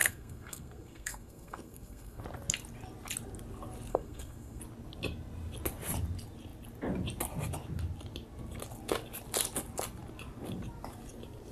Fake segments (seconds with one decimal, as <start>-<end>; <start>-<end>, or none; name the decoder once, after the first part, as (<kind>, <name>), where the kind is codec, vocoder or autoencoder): 0.0-2.2 (codec, SNAC); 3.9-4.6